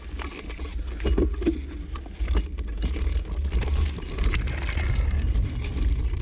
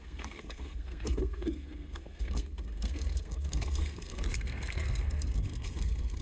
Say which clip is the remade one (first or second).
second